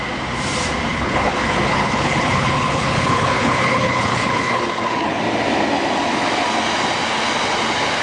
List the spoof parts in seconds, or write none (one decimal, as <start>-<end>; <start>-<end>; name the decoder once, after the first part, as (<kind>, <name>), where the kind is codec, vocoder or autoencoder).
0.9-5.2 (codec, HILCodec)